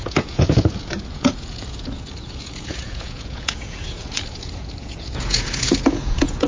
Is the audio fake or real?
fake